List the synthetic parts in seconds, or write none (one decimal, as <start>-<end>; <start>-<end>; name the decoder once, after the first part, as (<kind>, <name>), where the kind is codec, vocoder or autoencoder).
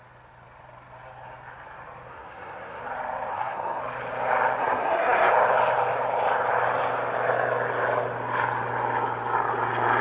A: 2.1-2.8 (codec, SNAC); 3.3-3.8; 4.6-5.3